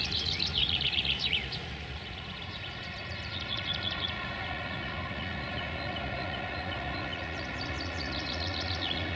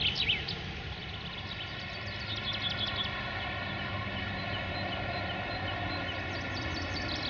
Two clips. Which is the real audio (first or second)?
second